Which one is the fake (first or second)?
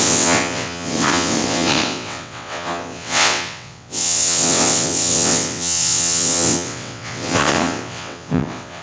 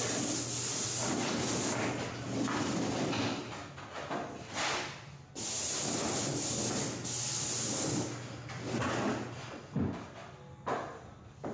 first